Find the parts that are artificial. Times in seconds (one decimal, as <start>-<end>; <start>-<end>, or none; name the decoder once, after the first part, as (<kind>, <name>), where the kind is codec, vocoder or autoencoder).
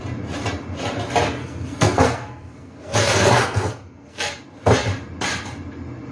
1.4-4.3 (codec, SNAC)